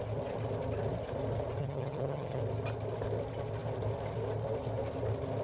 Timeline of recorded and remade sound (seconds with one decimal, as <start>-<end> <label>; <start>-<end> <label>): 0.0-1.6 recorded; 1.6-2.4 remade; 2.4-5.4 recorded